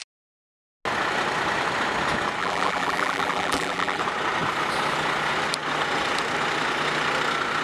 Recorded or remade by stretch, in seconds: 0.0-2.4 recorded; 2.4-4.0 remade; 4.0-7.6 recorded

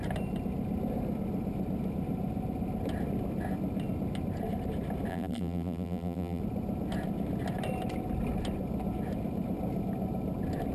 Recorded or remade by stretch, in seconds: 0.0-5.1 recorded; 5.1-6.4 remade; 6.4-10.7 recorded

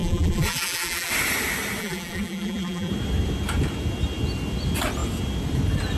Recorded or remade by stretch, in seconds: 0.0-1.1 remade; 1.1-1.8 recorded; 1.8-2.9 remade; 2.9-6.0 recorded

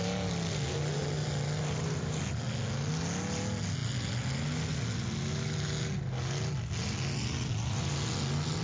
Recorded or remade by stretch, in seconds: 0.0-8.6 recorded

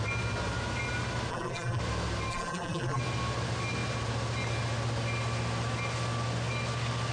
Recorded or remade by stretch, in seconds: 0.0-1.3 recorded; 1.3-1.8 remade; 1.8-2.3 recorded; 2.3-3.0 remade; 3.0-7.1 recorded